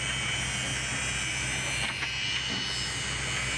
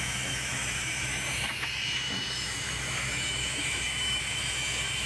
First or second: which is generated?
second